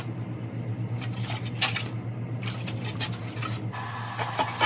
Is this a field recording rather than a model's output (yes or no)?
yes